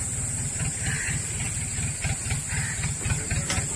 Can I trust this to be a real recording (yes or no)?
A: yes